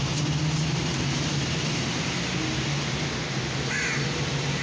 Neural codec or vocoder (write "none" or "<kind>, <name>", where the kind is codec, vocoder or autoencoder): none